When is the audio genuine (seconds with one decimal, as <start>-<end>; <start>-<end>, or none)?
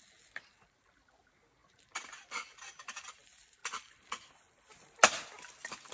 0.0-5.9